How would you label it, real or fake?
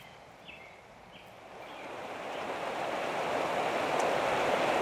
real